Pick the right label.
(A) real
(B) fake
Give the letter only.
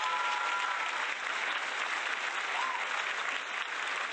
A